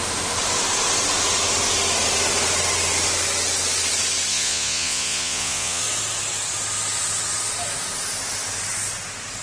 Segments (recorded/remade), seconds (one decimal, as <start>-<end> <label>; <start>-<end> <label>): 0.0-4.3 recorded; 4.3-5.8 remade; 5.8-9.4 recorded